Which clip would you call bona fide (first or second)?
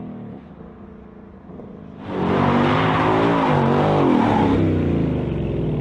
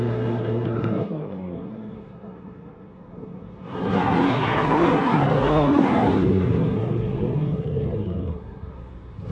first